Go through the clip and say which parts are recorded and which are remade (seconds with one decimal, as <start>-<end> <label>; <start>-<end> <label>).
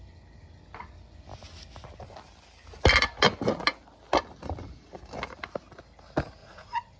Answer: 0.0-6.4 recorded; 6.4-7.0 remade